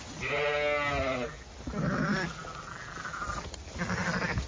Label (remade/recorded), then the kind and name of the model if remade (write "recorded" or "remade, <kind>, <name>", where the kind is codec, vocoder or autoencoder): recorded